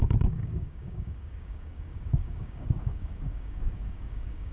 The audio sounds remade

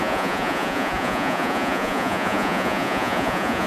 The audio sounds remade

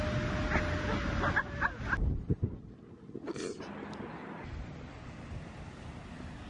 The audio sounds recorded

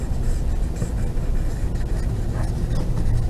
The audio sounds recorded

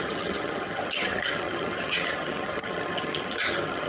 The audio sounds remade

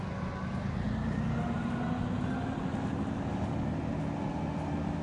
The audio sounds recorded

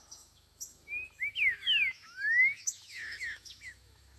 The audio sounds remade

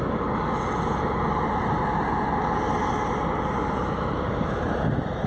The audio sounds recorded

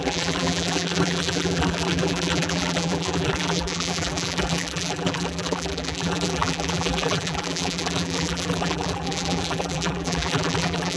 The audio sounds remade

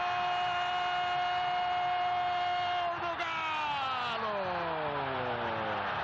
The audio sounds recorded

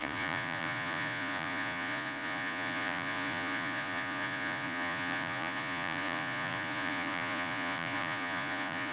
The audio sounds remade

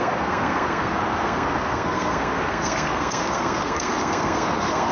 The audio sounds remade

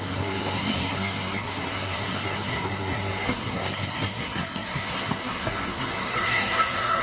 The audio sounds remade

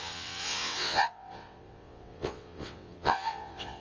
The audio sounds remade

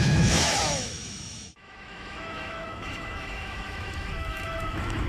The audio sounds remade